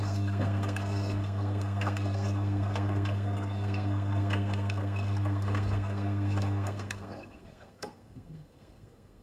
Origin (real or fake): fake